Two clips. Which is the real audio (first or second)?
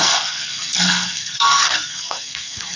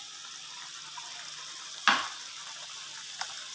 second